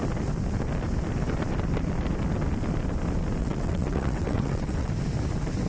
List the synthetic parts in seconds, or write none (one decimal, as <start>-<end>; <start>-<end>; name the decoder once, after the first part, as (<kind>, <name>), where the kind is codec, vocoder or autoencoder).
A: 3.4-4.9 (vocoder, WaveNeXt)